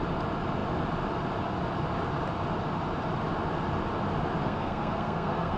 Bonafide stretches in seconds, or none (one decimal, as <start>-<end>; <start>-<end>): 0.0-4.4